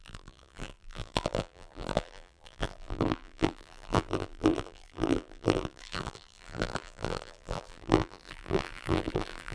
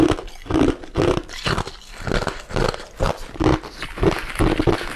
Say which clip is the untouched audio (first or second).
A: second